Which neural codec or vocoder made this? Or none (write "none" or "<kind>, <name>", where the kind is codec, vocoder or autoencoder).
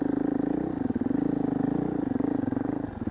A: vocoder, BigVGAN v2